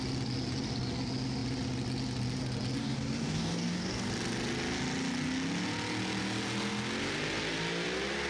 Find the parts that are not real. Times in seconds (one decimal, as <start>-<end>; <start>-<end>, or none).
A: 2.8-4.1